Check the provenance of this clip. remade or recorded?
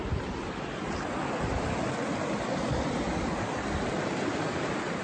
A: recorded